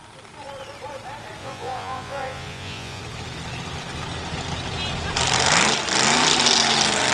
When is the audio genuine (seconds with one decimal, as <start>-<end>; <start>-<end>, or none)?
0.0-1.4; 3.0-7.1